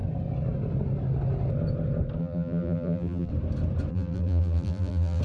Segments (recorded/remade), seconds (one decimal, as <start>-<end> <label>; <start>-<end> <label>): 0.0-2.2 recorded; 2.2-3.3 remade; 3.3-3.9 recorded; 3.9-5.2 remade